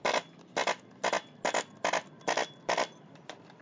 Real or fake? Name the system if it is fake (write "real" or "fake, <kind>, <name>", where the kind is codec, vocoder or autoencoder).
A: real